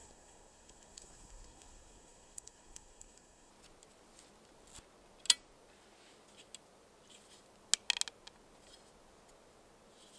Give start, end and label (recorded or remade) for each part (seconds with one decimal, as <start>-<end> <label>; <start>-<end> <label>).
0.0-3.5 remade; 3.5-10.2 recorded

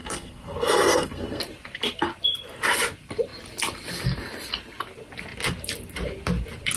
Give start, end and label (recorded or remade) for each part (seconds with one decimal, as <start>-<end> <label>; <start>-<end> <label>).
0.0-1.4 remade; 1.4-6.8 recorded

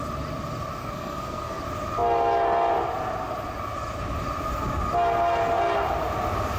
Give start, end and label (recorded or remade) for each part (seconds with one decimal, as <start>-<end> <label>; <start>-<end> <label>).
0.0-0.8 recorded; 0.8-1.6 remade; 1.6-6.6 recorded

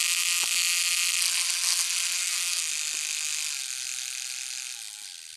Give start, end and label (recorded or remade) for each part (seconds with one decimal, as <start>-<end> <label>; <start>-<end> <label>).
0.0-2.2 recorded; 2.2-2.7 remade; 2.7-5.4 recorded

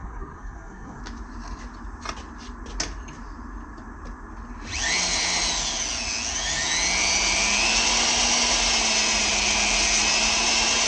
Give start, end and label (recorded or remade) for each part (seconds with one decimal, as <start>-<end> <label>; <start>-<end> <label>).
0.0-1.0 remade; 1.0-10.9 recorded

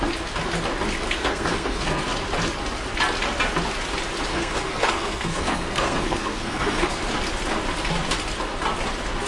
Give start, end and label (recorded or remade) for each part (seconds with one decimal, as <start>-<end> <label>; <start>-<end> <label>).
0.0-1.2 recorded; 1.2-2.0 remade; 2.0-4.3 recorded; 4.3-7.0 remade; 7.0-9.3 recorded